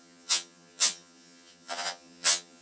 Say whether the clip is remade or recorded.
remade